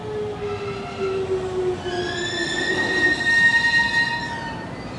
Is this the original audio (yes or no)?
yes